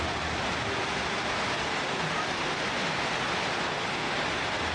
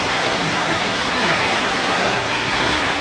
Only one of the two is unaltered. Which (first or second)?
first